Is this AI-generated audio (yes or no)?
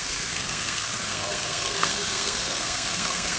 yes